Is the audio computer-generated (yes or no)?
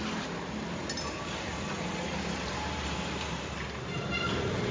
yes